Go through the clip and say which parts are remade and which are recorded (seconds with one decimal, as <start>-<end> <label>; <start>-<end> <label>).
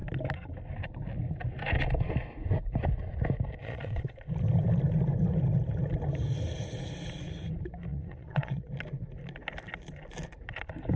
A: 0.0-3.6 recorded; 3.6-4.2 remade; 4.2-7.9 recorded; 7.9-8.7 remade; 8.7-11.0 recorded